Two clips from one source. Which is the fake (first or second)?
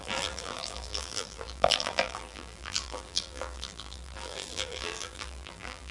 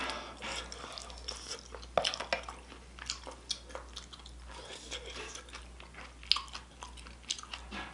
first